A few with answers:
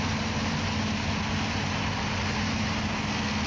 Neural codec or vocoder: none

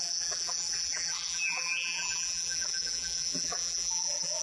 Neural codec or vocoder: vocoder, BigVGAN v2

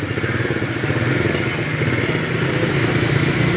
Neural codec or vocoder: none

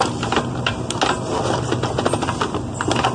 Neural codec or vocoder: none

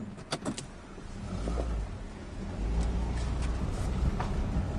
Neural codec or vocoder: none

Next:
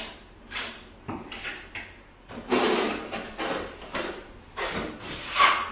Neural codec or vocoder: vocoder, BigVGAN v2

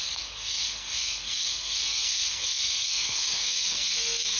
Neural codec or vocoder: codec, SNAC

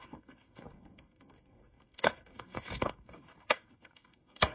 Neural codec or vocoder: codec, SNAC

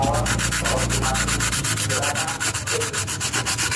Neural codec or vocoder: none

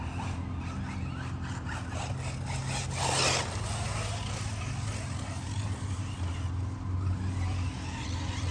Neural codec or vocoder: none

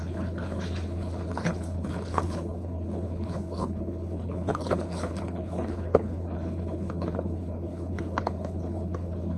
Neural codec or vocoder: codec, HILCodec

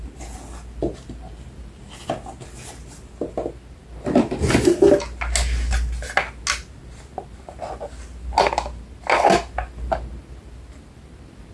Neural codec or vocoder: none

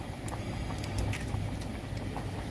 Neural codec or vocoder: none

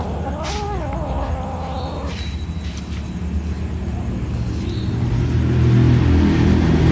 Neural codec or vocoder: none